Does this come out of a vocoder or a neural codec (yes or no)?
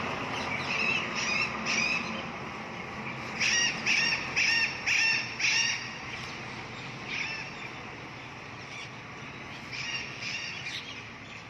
no